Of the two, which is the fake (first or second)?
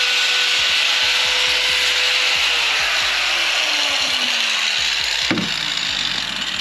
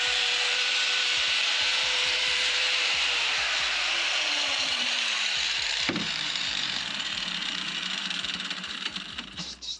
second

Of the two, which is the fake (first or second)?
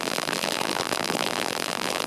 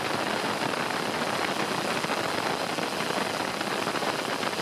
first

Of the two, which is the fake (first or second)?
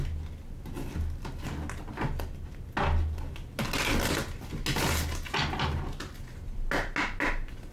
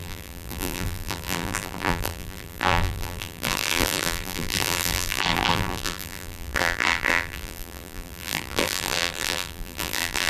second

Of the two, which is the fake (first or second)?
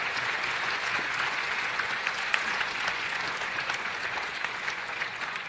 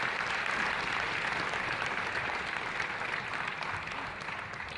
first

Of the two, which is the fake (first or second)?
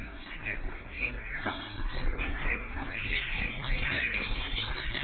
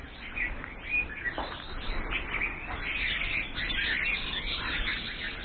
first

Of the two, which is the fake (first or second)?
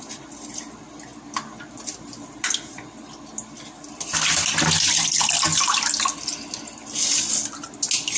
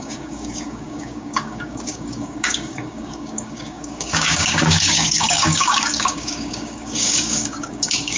second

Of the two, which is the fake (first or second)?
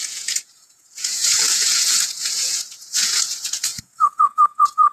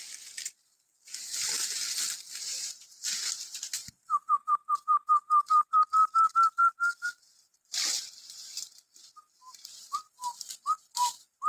first